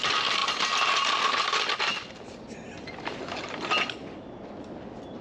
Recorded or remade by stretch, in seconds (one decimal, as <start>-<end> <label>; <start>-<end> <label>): 0.0-5.2 recorded